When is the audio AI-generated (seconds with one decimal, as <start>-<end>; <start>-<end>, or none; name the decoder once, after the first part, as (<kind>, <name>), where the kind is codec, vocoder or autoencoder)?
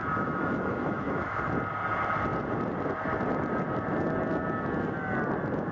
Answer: 0.0-1.4 (autoencoder, DAC-VAE)